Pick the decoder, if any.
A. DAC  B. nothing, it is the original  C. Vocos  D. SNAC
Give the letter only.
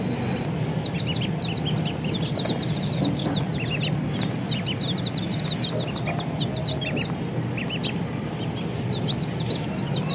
B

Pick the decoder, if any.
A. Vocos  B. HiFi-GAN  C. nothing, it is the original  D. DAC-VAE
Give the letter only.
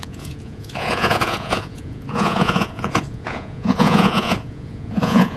A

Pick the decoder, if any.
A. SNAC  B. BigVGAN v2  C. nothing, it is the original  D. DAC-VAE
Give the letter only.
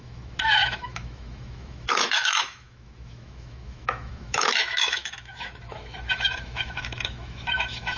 D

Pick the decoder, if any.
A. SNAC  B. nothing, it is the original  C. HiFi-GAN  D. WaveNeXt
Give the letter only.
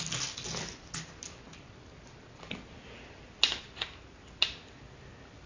B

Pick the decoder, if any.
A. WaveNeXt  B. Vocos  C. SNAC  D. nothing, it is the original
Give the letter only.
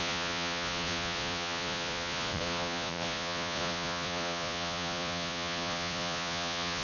B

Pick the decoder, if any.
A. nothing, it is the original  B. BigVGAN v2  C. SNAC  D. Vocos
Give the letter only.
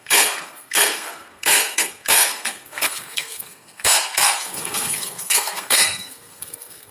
C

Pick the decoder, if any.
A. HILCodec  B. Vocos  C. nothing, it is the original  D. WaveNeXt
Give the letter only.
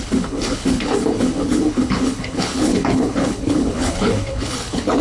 A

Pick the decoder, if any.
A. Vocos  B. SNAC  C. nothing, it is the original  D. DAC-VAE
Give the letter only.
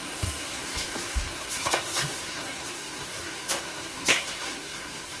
B